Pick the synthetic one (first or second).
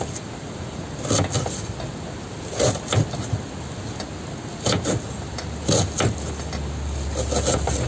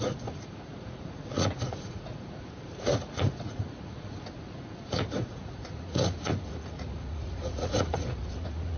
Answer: second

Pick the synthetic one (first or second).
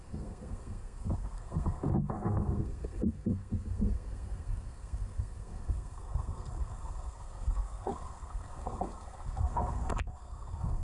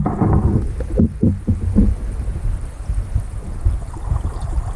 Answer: first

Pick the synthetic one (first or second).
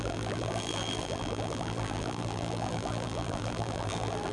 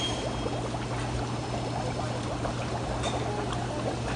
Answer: first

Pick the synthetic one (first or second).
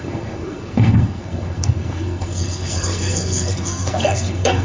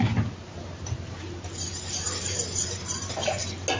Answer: first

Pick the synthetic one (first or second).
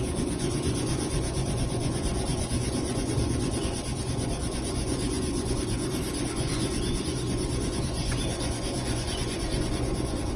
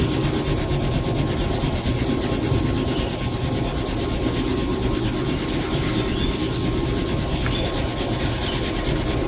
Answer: first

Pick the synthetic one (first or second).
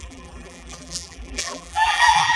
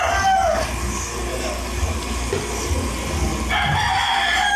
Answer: first